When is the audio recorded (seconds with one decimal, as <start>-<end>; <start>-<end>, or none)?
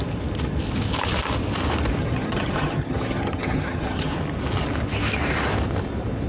0.0-2.0; 4.1-6.3